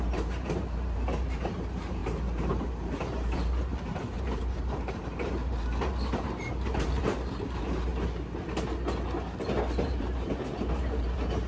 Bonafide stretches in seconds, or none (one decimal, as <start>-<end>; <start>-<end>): 7.9-9.7